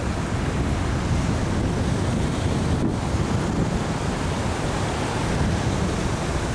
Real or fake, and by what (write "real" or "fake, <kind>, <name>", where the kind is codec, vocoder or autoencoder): real